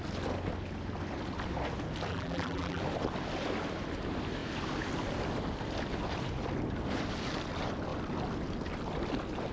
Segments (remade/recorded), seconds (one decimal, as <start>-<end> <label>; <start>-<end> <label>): 0.0-2.1 recorded; 2.1-2.8 remade; 2.8-9.5 recorded